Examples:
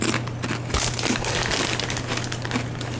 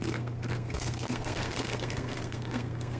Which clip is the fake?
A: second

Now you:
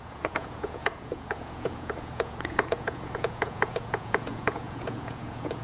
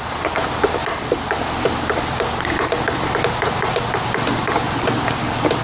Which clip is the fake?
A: first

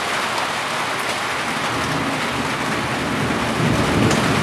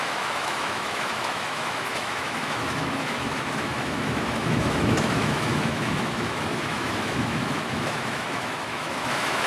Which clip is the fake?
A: second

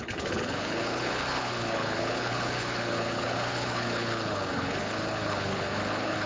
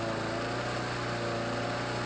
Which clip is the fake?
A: first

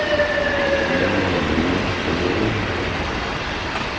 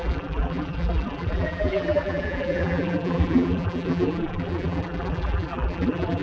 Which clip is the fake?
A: second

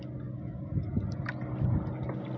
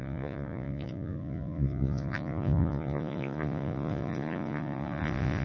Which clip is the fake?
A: second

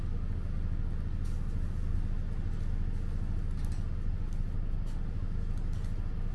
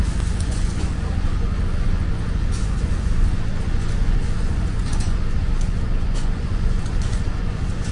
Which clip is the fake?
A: second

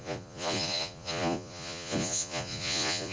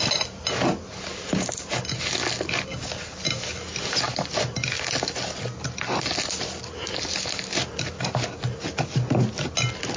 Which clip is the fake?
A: first